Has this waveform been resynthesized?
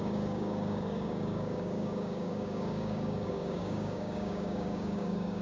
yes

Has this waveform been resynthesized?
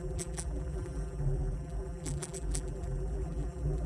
yes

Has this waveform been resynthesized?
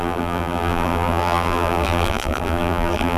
yes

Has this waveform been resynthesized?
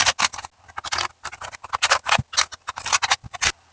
no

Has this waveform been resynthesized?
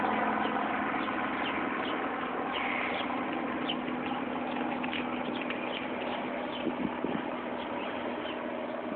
no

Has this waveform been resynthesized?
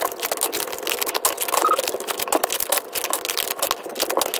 no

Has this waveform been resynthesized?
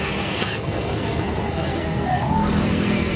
yes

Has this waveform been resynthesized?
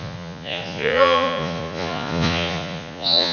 yes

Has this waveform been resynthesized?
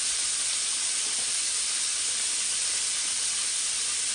no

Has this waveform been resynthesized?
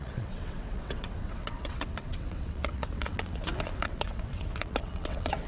yes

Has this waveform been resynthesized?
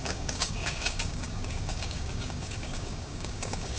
yes